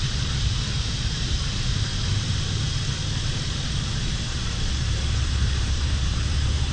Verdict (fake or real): fake